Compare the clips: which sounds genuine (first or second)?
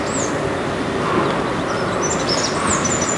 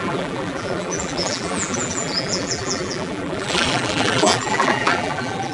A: first